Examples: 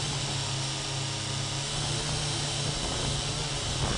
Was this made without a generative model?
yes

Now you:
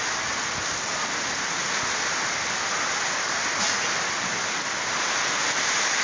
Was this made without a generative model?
yes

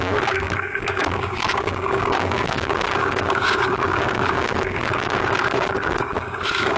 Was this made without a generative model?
no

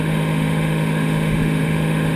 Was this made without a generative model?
no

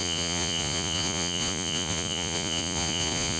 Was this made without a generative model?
no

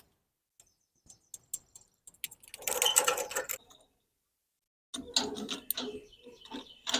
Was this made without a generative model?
yes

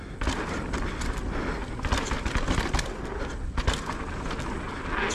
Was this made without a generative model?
yes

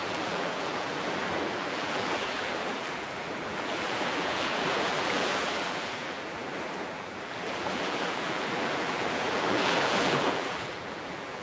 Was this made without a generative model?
no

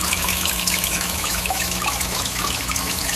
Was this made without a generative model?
no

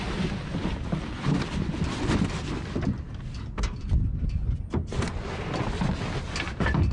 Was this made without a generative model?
yes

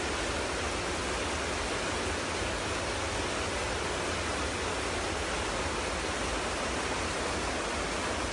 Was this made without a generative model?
yes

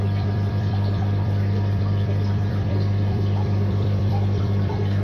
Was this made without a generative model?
no